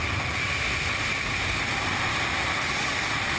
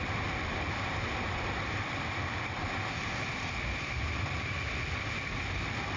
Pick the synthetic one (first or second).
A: second